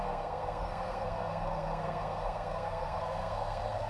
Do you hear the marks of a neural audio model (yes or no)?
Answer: yes